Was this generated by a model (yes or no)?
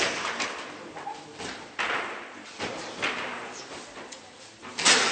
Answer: no